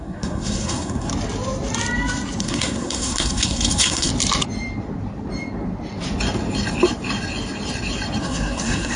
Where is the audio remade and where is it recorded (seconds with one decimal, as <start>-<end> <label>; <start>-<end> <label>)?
0.0-1.1 remade; 1.1-2.4 recorded; 2.4-4.1 remade; 4.1-8.2 recorded; 8.2-9.0 remade